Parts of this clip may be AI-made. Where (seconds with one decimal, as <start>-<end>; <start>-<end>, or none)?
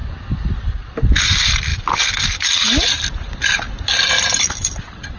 none